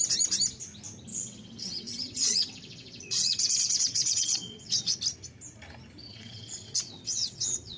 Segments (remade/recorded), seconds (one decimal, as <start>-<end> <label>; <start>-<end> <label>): 0.0-1.1 recorded; 1.1-5.0 remade; 5.0-6.1 recorded; 6.1-7.8 remade

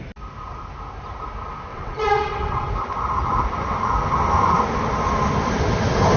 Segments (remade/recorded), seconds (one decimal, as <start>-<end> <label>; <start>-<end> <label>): 0.0-1.7 recorded; 1.7-2.7 remade; 2.7-6.2 recorded

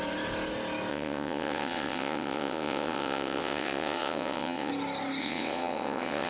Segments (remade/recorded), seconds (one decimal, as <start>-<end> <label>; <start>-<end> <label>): 0.0-0.9 recorded; 0.9-4.7 remade; 4.7-5.2 recorded; 5.2-6.3 remade

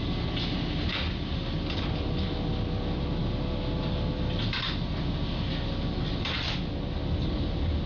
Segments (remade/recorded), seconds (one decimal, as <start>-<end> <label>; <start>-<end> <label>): 0.0-7.9 recorded

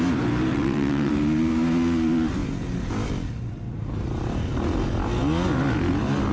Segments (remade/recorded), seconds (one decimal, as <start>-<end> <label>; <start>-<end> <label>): 0.0-0.5 recorded; 0.5-1.1 remade; 1.1-6.3 recorded